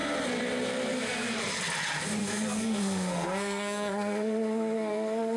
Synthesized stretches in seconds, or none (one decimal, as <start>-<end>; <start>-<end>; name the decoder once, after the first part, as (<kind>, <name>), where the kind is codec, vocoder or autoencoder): 2.2-5.4 (codec, SNAC)